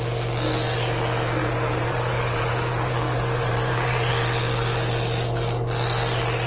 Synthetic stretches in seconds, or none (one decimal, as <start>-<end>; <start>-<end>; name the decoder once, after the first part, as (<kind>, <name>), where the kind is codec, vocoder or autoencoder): 1.4-4.1 (vocoder, BigVGAN v2)